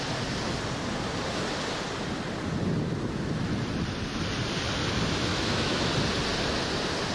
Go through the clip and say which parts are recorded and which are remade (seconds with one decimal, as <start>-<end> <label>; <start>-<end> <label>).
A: 0.0-5.3 recorded; 5.3-5.9 remade; 5.9-7.1 recorded